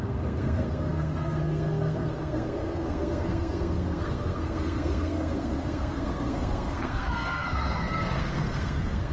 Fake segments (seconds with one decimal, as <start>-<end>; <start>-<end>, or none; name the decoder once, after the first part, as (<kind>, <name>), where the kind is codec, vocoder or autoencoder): 0.0-9.1 (codec, SNAC)